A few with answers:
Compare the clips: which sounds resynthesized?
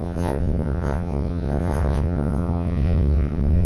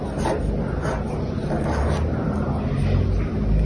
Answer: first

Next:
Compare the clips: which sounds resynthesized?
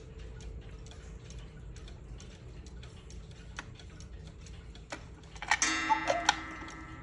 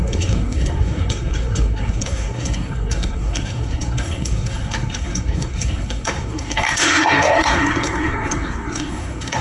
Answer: second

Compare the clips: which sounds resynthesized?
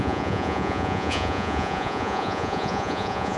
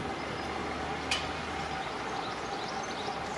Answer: first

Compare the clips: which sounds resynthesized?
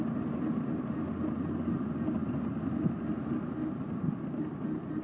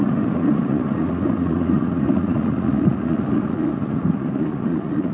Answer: second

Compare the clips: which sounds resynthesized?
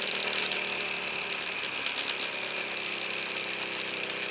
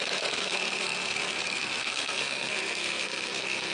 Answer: second